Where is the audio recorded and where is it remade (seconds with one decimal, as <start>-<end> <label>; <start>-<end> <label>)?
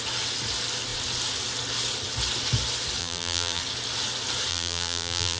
0.0-3.0 recorded; 3.0-3.6 remade; 3.6-4.5 recorded; 4.5-5.4 remade